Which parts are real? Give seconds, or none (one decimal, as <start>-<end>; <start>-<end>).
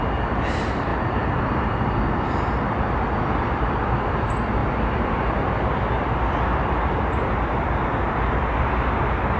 0.0-9.4